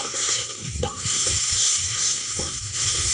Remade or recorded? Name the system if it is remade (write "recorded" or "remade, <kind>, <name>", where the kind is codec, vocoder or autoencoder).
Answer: remade, codec, SNAC